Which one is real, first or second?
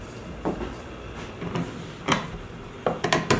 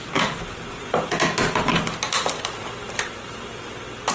second